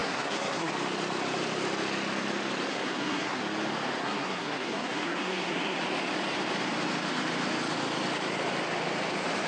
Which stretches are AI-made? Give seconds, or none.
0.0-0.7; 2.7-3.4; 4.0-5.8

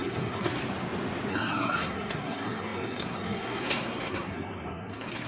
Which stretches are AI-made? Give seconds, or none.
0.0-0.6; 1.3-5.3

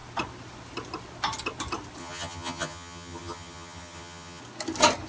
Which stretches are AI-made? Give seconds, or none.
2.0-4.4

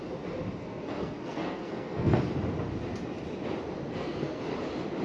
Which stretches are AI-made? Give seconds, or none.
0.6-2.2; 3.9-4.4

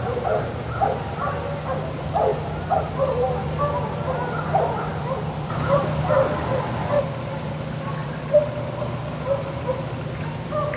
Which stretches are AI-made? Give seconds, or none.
2.3-2.8; 4.9-6.5; 8.0-8.8

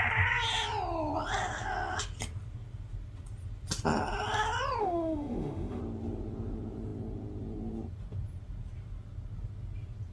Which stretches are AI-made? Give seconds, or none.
4.8-5.8